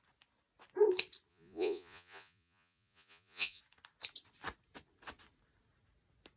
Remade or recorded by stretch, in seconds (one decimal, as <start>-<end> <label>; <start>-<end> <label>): 0.0-1.3 recorded; 1.3-3.6 remade; 3.6-6.4 recorded